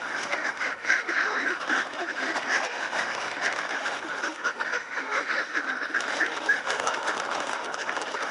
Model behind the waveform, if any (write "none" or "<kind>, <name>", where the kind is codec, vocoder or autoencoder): autoencoder, DAC-VAE